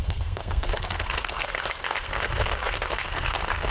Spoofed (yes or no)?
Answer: yes